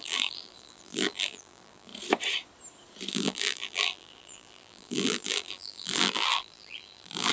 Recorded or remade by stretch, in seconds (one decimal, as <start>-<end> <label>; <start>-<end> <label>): 0.0-1.9 remade; 1.9-3.1 recorded; 3.1-7.3 remade

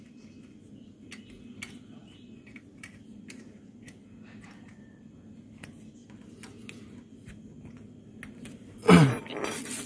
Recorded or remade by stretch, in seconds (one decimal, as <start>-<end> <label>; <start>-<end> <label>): 0.0-2.0 recorded; 2.0-3.4 remade; 3.4-9.9 recorded

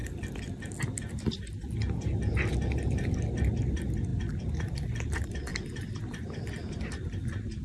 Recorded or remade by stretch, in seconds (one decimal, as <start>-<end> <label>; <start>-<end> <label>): 0.0-2.7 recorded; 2.7-5.5 remade; 5.5-6.0 recorded; 6.0-7.6 remade